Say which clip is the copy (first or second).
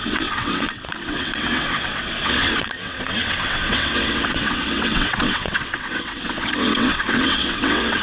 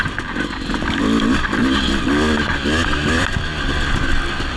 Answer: first